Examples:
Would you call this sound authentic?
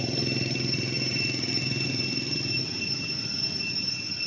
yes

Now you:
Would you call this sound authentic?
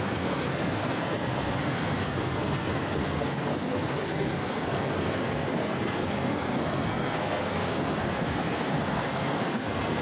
no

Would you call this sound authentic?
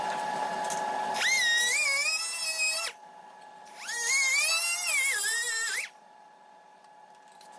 yes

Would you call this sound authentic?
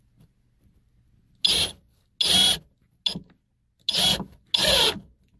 yes